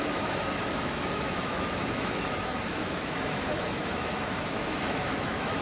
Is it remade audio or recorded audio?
remade